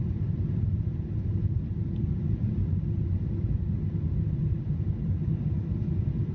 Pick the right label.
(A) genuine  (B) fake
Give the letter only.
A